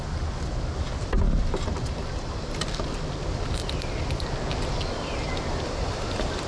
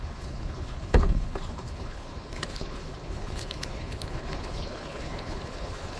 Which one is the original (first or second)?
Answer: first